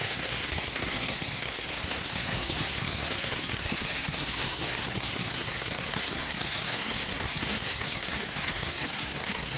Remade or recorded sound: remade